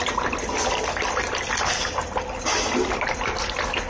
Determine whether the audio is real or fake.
real